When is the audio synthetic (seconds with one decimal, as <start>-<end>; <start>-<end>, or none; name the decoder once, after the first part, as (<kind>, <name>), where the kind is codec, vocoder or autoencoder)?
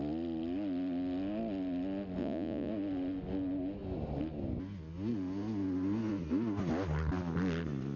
2.2-2.7 (vocoder, Vocos)